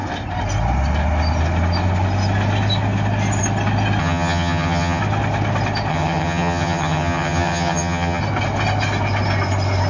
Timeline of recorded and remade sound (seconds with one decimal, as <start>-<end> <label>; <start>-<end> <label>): 0.0-4.0 recorded; 4.0-5.0 remade; 5.0-5.9 recorded; 5.9-8.2 remade; 8.2-9.9 recorded